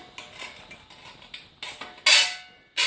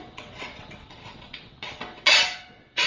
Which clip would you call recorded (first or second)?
first